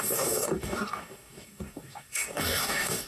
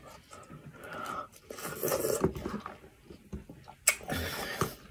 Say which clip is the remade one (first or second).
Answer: first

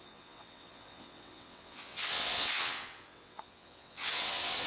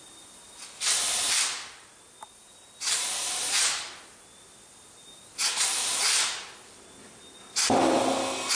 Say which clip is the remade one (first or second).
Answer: first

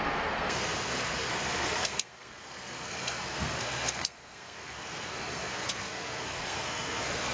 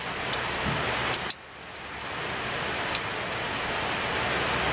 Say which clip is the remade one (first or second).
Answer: first